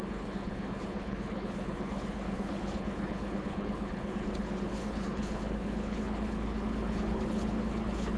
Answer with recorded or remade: remade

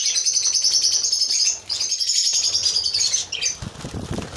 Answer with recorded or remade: recorded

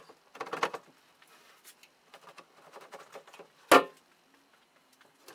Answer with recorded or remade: recorded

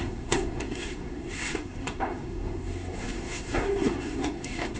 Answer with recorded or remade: remade